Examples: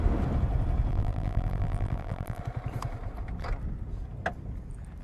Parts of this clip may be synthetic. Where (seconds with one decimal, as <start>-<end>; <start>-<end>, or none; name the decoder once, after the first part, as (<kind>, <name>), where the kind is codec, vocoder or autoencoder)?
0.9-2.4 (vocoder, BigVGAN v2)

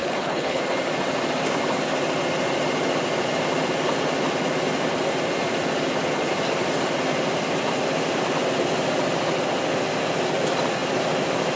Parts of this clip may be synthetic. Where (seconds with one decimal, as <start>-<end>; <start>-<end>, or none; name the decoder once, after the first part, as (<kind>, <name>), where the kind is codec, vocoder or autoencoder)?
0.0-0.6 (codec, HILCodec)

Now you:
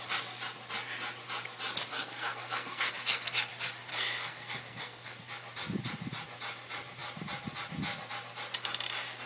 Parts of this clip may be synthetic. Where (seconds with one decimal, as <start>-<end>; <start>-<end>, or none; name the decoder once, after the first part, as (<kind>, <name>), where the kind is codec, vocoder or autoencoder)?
1.9-3.5 (codec, SNAC); 3.9-5.2

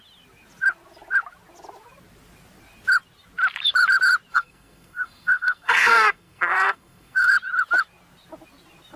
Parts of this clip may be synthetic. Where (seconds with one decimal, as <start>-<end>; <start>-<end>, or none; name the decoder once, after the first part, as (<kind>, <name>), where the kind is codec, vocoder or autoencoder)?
4.3-7.3 (codec, SNAC)

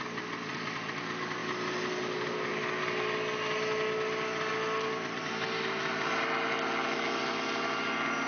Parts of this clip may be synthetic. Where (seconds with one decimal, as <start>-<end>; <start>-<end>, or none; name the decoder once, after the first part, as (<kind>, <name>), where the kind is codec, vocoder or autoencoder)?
none